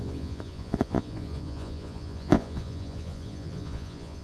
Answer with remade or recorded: remade